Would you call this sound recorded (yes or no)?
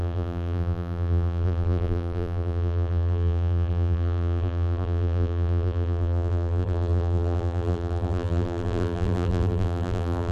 no